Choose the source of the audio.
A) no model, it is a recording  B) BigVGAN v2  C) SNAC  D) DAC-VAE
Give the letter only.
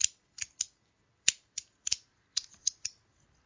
A